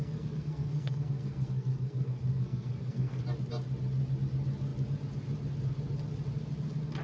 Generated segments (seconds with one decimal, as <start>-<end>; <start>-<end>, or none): 0.0-3.2